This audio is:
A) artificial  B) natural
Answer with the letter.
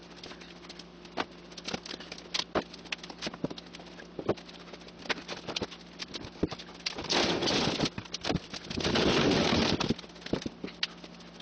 B